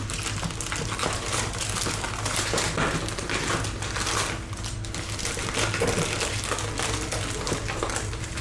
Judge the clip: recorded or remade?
recorded